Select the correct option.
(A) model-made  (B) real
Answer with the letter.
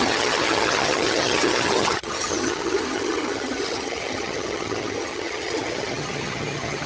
A